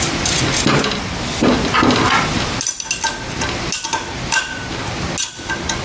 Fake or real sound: real